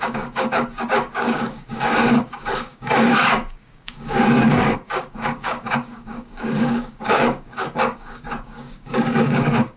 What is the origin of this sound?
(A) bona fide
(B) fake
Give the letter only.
B